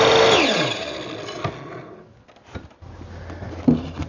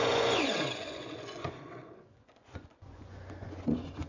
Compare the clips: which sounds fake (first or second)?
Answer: second